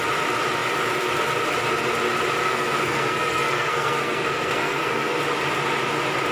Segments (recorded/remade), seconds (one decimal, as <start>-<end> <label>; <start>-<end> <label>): 0.0-2.4 recorded; 2.4-5.2 remade; 5.2-6.3 recorded